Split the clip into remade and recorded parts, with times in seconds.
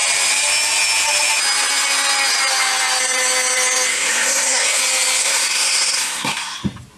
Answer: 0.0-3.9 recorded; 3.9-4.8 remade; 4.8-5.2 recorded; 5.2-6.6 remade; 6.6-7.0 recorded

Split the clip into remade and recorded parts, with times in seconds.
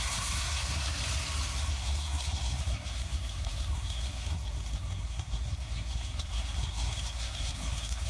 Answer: 0.0-1.0 remade; 1.0-1.7 recorded; 1.7-8.1 remade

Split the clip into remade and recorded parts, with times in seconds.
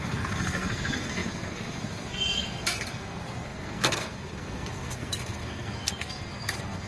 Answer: 0.0-6.9 remade